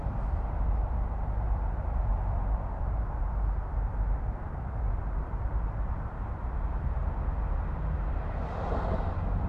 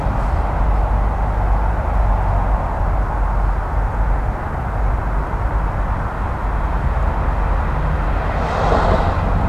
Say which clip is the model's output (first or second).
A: first